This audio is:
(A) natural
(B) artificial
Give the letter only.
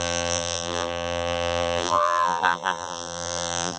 B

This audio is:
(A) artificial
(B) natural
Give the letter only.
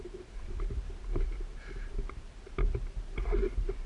A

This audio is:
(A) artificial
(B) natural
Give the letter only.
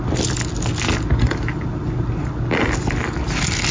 B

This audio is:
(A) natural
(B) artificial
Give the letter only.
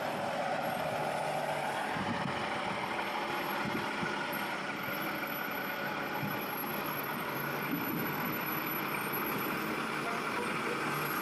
A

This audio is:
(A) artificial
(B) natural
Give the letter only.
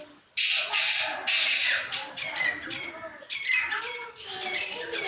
B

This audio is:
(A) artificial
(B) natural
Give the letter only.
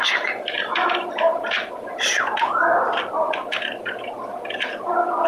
A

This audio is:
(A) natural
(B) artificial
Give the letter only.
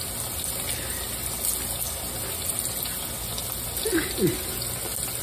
A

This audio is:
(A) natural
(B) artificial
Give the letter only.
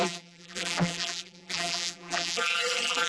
B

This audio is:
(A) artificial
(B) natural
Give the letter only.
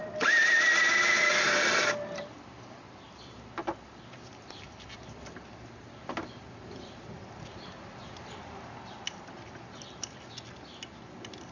A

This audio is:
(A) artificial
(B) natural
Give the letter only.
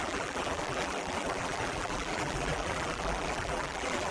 A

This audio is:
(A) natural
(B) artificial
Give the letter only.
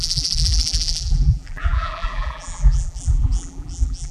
B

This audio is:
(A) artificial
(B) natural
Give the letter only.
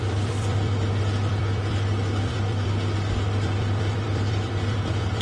A